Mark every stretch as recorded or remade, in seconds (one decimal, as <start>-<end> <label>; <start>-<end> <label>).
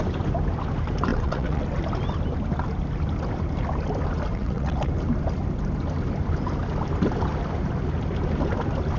0.0-1.1 recorded; 1.1-1.6 remade; 1.6-4.3 recorded; 4.3-4.9 remade; 4.9-9.0 recorded